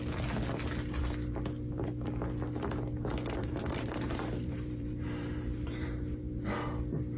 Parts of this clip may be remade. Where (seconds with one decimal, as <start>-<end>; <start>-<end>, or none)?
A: 3.4-6.5